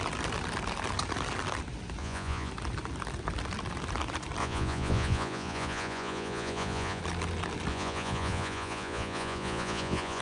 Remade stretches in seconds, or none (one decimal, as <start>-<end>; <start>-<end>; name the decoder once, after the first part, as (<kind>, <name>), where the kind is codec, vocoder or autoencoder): 2.0-2.5 (vocoder, Vocos); 4.4-7.0; 7.7-10.2